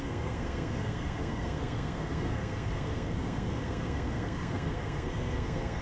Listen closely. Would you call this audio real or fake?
fake